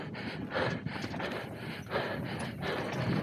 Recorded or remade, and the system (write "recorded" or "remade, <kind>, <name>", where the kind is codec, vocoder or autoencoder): recorded